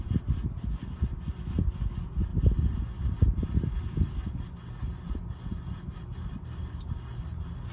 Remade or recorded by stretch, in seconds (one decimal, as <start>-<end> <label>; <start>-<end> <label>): 0.0-7.7 recorded